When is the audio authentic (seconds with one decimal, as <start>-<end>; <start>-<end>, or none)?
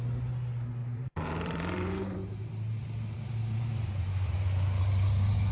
0.0-0.8; 4.1-5.5